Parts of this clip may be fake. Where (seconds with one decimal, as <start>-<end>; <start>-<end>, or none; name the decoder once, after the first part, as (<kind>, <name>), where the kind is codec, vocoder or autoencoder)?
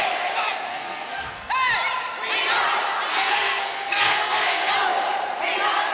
0.7-1.5 (codec, SNAC); 3.1-4.7